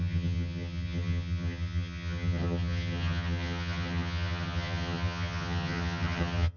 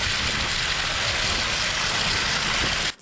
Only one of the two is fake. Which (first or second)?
first